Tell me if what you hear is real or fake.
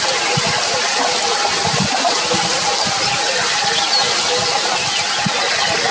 real